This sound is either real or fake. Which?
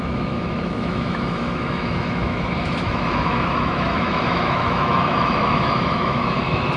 fake